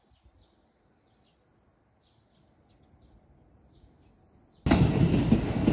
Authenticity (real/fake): real